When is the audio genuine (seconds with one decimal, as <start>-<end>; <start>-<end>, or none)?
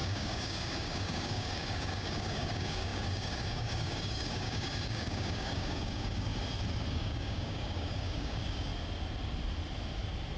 6.3-6.9; 8.7-10.4